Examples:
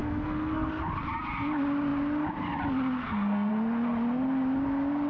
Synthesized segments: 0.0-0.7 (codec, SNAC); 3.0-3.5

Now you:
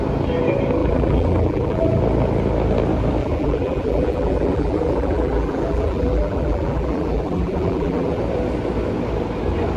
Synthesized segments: 0.8-2.0 (vocoder, BigVGAN v2); 3.2-8.2

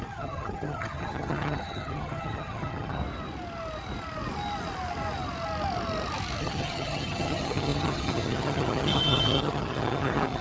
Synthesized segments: 0.0-3.0 (vocoder, HiFi-GAN); 6.4-10.4